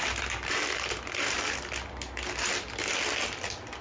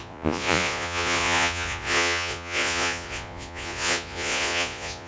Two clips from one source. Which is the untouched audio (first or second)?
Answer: first